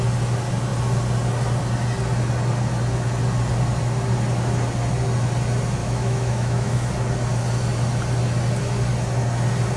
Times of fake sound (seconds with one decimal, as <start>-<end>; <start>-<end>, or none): 5.8-6.9